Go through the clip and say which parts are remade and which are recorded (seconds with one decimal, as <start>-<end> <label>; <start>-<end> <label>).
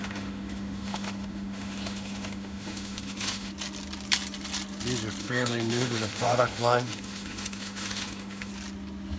0.0-3.5 remade; 3.5-5.2 recorded; 5.2-8.5 remade; 8.5-9.2 recorded